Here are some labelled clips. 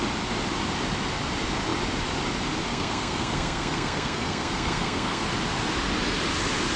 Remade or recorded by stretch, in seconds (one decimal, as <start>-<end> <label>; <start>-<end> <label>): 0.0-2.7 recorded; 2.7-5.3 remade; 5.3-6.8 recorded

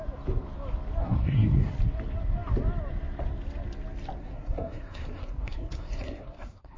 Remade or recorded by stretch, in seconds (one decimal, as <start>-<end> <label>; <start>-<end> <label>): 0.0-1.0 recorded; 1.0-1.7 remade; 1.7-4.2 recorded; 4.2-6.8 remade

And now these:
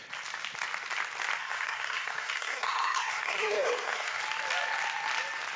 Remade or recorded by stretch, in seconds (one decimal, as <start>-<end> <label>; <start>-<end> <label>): 0.0-1.4 recorded; 1.4-4.2 remade; 4.2-5.6 recorded

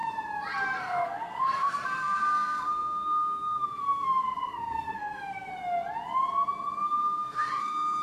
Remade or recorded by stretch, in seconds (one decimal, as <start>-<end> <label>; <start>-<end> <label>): 0.0-0.8 recorded; 0.8-5.5 remade; 5.5-6.8 recorded; 6.8-8.0 remade

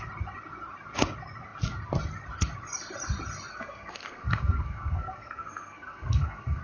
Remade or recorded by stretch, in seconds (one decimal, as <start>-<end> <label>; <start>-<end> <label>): 0.0-3.5 recorded; 3.5-6.6 remade

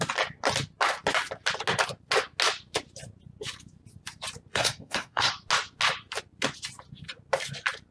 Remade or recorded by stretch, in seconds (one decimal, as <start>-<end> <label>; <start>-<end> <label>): 0.0-4.5 recorded; 4.5-5.3 remade; 5.3-7.9 recorded

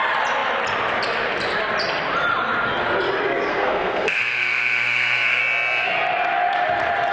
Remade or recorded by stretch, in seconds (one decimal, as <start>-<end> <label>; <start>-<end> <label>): 0.0-3.5 recorded; 3.5-5.4 remade; 5.4-7.1 recorded

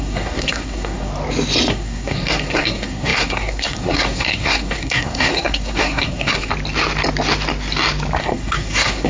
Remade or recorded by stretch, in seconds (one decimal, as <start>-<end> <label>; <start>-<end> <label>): 0.0-1.1 remade; 1.1-1.7 recorded; 1.7-6.5 remade; 6.5-8.2 recorded; 8.2-9.1 remade